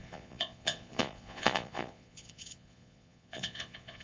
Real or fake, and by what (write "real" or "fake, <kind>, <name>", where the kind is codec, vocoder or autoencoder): fake, vocoder, Vocos